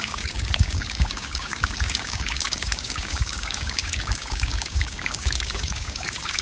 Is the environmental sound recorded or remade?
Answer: remade